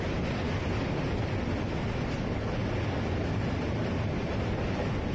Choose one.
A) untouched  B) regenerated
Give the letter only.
A